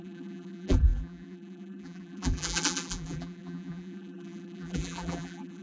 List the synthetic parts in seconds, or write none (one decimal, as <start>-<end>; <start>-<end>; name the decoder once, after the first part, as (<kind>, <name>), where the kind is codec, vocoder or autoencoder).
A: 0.0-5.6 (vocoder, BigVGAN v2)